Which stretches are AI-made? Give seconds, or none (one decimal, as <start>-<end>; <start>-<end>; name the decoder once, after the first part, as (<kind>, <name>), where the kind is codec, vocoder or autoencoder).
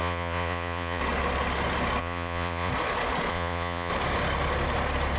0.0-1.0 (vocoder, Vocos); 2.0-2.7; 3.3-3.9